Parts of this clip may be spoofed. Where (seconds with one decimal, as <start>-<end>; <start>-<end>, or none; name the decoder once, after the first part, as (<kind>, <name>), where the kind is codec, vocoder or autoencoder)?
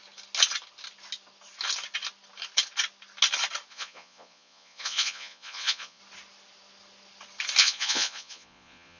3.7-6.0 (vocoder, Vocos); 7.6-9.0